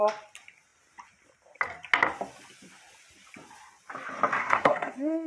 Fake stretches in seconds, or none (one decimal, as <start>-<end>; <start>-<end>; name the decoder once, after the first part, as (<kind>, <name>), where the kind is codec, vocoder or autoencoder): 4.4-5.3 (codec, SNAC)